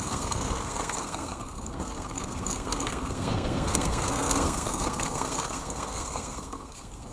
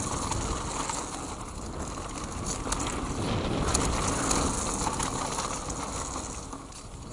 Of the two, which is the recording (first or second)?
second